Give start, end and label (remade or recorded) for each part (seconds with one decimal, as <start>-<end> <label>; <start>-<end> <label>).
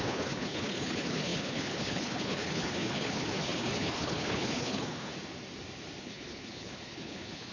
0.0-5.1 remade; 5.1-6.0 recorded; 6.0-7.5 remade